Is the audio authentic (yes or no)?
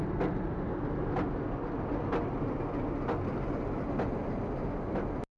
yes